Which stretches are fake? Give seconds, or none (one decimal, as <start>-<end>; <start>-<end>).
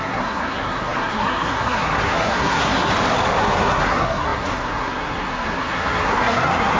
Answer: 0.0-2.9; 3.4-6.8